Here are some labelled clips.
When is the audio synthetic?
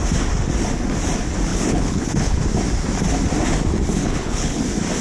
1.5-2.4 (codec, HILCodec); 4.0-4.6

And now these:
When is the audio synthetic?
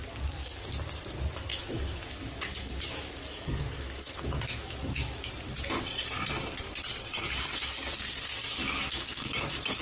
1.5-5.3 (autoencoder, DAC-VAE); 8.6-9.8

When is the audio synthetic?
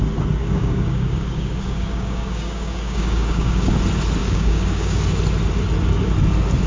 0.4-3.7 (codec, DAC); 4.2-5.0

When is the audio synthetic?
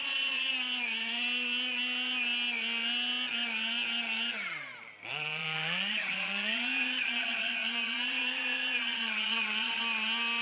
0.0-0.5 (vocoder, Vocos); 5.1-9.8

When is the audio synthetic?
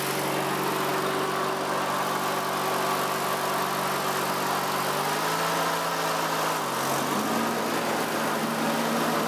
none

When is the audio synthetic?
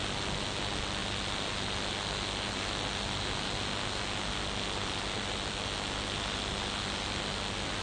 none